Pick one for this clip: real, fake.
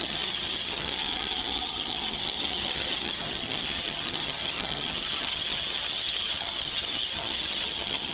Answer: fake